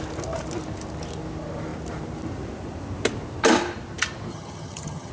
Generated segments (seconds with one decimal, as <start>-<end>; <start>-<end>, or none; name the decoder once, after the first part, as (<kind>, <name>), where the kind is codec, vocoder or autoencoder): 4.3-5.1 (vocoder, HiFi-GAN)